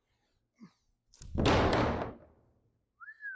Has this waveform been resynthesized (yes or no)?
no